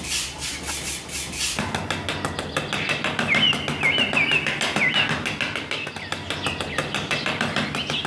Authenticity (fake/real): real